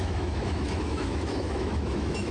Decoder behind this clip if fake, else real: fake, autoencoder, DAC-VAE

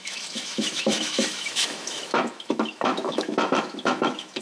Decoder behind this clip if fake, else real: fake, autoencoder, DAC-VAE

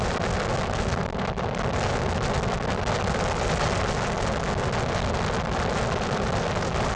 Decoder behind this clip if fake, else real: real